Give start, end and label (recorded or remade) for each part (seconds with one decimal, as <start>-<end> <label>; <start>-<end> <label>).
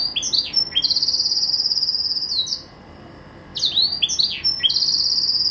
0.0-5.5 recorded